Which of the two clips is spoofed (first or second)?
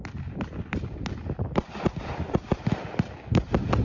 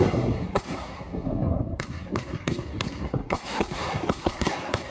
second